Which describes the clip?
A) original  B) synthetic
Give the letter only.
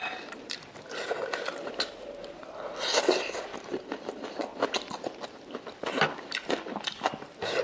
A